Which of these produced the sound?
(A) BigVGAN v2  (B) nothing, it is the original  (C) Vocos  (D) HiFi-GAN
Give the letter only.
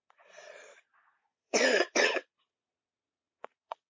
C